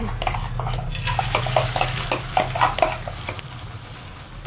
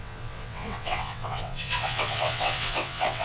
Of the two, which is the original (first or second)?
first